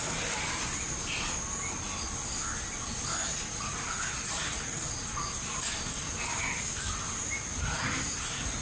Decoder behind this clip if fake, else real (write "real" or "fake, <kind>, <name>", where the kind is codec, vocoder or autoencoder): real